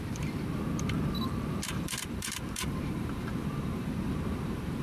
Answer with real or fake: fake